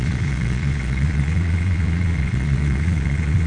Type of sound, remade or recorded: remade